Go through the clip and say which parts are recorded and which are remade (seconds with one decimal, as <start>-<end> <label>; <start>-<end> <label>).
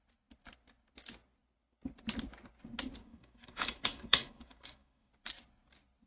0.0-3.0 recorded; 3.0-5.1 remade; 5.1-6.1 recorded